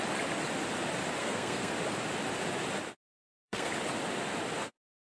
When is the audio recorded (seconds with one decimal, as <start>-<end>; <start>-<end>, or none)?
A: 0.0-1.2; 1.7-3.0; 3.7-5.0